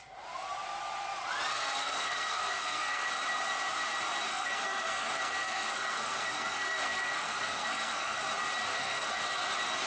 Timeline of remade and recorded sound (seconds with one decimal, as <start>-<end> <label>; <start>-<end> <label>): 0.0-1.5 recorded; 1.5-3.1 remade; 3.1-4.3 recorded; 4.3-8.2 remade; 8.2-8.7 recorded; 8.7-9.2 remade; 9.2-9.9 recorded